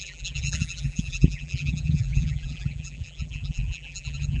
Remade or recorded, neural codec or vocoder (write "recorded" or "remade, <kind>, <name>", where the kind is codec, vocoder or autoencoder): remade, vocoder, BigVGAN v2